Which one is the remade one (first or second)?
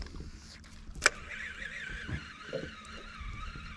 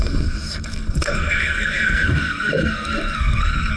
second